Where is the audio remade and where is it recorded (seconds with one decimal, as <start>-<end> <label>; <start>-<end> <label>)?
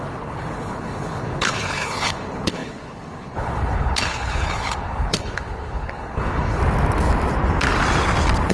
0.0-6.6 remade; 6.6-8.5 recorded